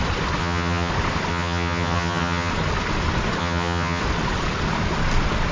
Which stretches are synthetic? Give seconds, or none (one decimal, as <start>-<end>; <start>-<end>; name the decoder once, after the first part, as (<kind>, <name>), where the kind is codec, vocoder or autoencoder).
0.4-0.9 (vocoder, HiFi-GAN); 1.3-2.5; 3.4-4.0